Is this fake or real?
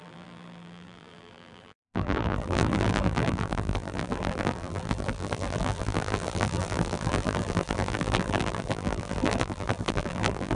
fake